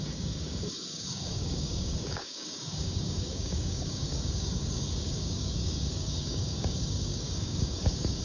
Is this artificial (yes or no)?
yes